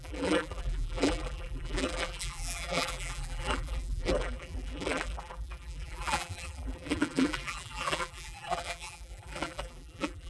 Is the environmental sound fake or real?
fake